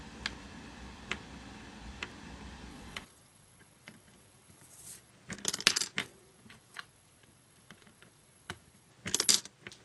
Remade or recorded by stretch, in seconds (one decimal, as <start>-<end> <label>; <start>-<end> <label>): 0.0-2.7 recorded; 2.7-5.1 remade; 5.1-6.0 recorded; 6.0-8.9 remade; 8.9-9.8 recorded